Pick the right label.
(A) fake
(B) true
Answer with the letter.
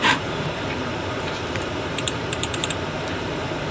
A